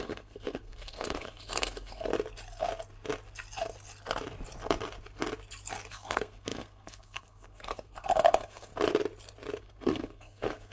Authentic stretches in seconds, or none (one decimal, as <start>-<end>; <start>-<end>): 2.1-5.9; 8.7-9.6